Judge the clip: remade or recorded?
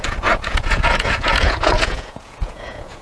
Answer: remade